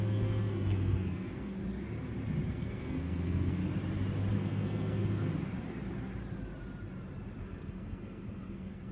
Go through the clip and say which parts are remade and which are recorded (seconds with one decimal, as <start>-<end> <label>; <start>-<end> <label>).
0.0-1.6 remade; 1.6-2.5 recorded; 2.5-3.6 remade; 3.6-4.3 recorded; 4.3-5.3 remade; 5.3-7.4 recorded; 7.4-8.9 remade